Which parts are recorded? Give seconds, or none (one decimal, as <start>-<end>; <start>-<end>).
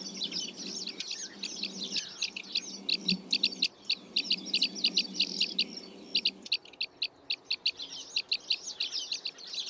0.0-9.7